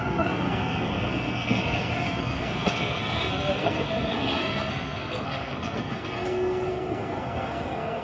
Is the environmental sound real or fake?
fake